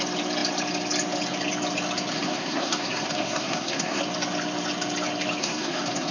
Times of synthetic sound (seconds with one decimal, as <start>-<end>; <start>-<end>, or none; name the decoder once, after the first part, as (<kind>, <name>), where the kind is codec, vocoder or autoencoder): 2.1-4.0 (codec, SNAC); 5.4-6.1